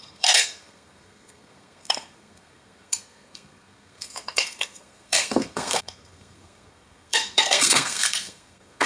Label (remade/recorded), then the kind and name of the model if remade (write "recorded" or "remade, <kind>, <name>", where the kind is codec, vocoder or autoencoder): remade, codec, SNAC